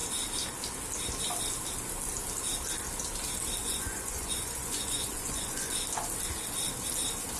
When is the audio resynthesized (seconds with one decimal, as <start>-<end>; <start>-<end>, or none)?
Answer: 3.6-5.7